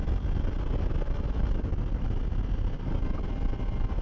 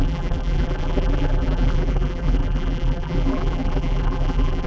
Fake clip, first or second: second